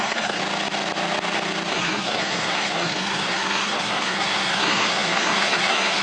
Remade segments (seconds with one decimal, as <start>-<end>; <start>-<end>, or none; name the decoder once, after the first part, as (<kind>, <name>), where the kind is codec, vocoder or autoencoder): 0.0-0.4 (codec, SNAC); 1.7-6.0